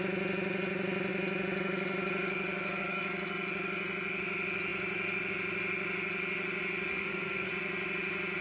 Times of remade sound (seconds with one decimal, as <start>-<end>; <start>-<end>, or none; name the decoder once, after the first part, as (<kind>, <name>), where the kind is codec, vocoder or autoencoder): 6.9-7.5 (codec, SNAC)